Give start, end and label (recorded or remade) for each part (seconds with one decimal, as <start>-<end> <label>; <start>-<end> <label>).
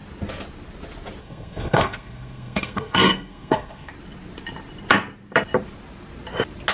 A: 0.0-1.2 recorded; 1.2-3.9 remade; 3.9-6.7 recorded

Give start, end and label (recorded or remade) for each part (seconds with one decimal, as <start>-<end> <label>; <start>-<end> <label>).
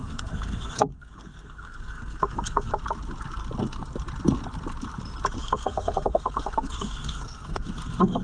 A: 0.0-2.7 remade; 2.7-5.4 recorded; 5.4-8.2 remade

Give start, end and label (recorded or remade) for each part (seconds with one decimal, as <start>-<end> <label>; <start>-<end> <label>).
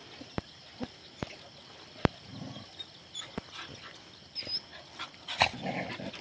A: 0.0-6.2 recorded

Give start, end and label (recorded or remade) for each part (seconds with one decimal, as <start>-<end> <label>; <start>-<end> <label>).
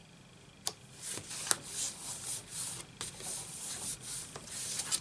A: 0.0-5.0 recorded